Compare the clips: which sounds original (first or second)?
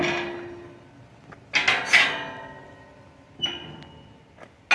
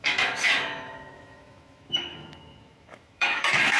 first